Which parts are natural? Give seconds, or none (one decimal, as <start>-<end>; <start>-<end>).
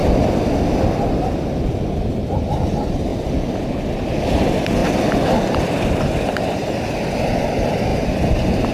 0.0-4.8; 6.3-7.9